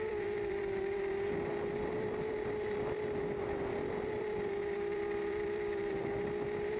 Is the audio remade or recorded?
remade